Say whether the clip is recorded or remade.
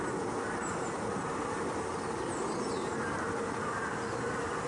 recorded